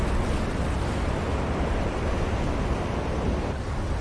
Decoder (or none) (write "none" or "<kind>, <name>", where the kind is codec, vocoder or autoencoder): none